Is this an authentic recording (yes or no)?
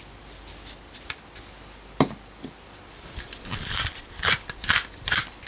yes